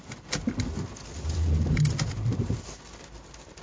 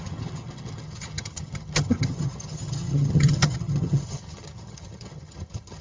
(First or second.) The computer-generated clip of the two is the second